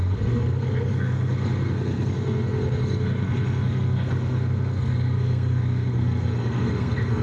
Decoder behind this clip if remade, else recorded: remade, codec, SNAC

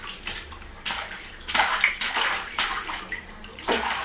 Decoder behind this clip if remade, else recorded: remade, vocoder, BigVGAN v2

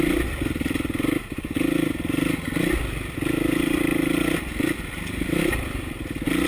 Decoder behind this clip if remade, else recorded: recorded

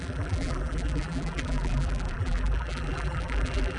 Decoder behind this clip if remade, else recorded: remade, vocoder, BigVGAN v2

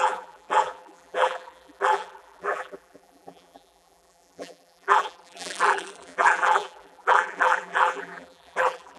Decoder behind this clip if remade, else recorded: remade, vocoder, BigVGAN v2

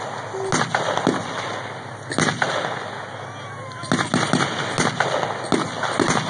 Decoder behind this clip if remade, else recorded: recorded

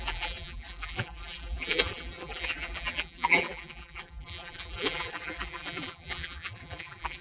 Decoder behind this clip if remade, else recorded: remade, vocoder, BigVGAN v2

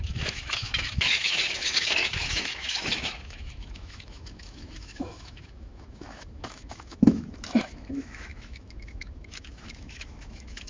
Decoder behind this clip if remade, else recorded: remade, autoencoder, DAC-VAE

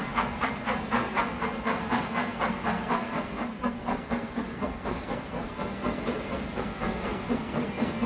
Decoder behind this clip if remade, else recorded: remade, codec, SNAC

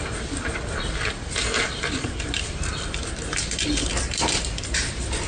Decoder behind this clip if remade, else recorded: remade, vocoder, BigVGAN v2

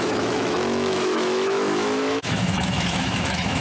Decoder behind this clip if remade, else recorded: remade, autoencoder, DAC-VAE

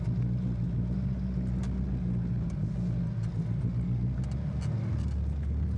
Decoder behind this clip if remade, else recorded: recorded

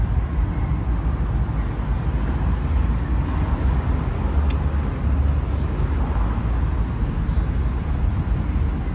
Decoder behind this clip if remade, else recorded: recorded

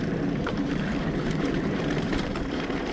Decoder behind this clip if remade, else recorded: remade, vocoder, BigVGAN v2